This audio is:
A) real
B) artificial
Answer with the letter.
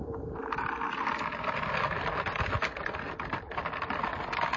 A